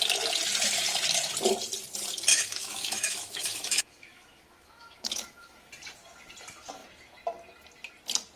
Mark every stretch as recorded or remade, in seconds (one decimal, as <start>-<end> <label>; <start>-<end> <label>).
0.0-2.3 recorded; 2.3-5.7 remade; 5.7-8.4 recorded

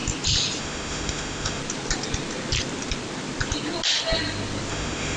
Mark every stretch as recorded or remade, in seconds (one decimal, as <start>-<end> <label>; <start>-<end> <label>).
0.0-0.6 recorded; 0.6-1.6 remade; 1.6-4.7 recorded; 4.7-5.2 remade

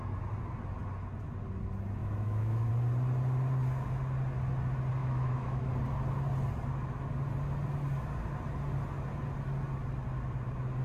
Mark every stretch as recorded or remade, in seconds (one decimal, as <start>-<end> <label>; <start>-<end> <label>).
0.0-2.0 recorded; 2.0-2.7 remade; 2.7-5.0 recorded; 5.0-5.7 remade; 5.7-10.8 recorded

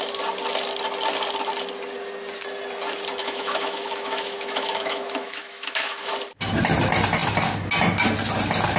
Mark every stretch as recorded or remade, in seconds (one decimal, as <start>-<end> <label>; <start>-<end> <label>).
0.0-3.2 recorded; 3.2-6.1 remade; 6.1-8.8 recorded

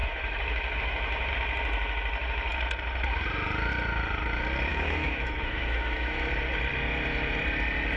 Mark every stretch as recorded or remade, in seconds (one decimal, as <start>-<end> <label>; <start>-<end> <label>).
0.0-1.3 remade; 1.3-4.7 recorded; 4.7-6.3 remade; 6.3-8.0 recorded

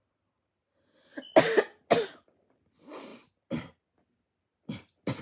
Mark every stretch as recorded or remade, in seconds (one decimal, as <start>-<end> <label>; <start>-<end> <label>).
0.0-5.2 recorded

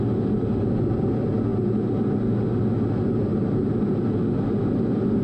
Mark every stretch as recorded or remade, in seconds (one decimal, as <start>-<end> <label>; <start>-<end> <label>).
0.0-5.2 recorded

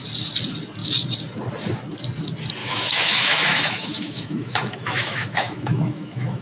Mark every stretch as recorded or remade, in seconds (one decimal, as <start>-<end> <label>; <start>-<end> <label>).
0.0-2.6 recorded; 2.6-6.4 remade